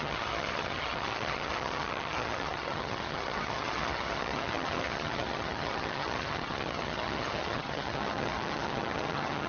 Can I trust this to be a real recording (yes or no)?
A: no